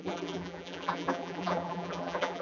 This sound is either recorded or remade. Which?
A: remade